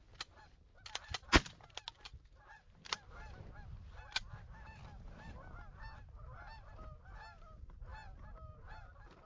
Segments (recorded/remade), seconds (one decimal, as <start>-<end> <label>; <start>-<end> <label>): 0.0-9.3 recorded

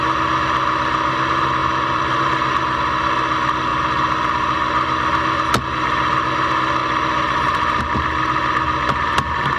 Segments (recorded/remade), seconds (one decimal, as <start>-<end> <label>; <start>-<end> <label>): 0.0-1.6 recorded; 1.6-2.6 remade; 2.6-6.8 recorded; 6.8-7.8 remade; 7.8-9.6 recorded

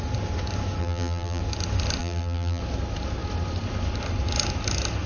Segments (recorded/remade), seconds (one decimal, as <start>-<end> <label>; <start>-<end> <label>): 0.0-0.8 recorded; 0.8-1.4 remade; 1.4-2.0 recorded; 2.0-2.6 remade; 2.6-5.1 recorded

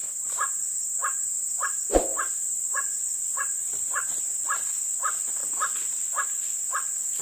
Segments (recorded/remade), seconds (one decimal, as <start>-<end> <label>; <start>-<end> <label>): 0.0-2.1 recorded; 2.1-4.2 remade; 4.2-7.2 recorded

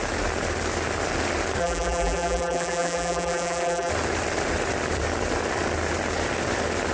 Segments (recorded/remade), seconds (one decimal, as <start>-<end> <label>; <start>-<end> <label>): 0.0-1.6 recorded; 1.6-3.9 remade; 3.9-6.9 recorded

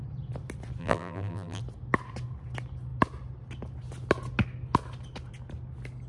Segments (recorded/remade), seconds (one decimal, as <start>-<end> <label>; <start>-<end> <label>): 0.0-0.8 recorded; 0.8-1.6 remade; 1.6-6.1 recorded

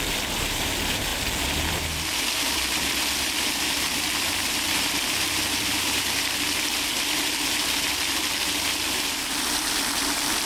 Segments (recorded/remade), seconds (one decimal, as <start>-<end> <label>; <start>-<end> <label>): 0.0-1.1 remade; 1.1-1.8 recorded; 1.8-10.5 remade